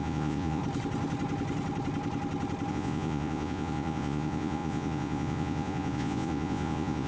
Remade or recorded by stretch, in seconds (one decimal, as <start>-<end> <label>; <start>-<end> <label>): 0.0-0.6 remade; 0.6-2.7 recorded; 2.7-7.1 remade